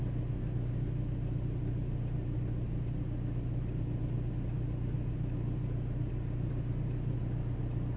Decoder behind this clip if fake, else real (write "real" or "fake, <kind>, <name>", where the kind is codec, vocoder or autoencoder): real